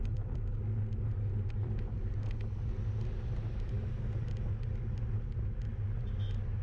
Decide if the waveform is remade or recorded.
recorded